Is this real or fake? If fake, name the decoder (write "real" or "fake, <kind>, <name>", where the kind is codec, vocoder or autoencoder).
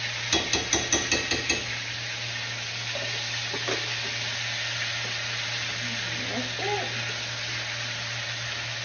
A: real